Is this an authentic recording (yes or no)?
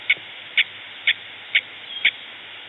yes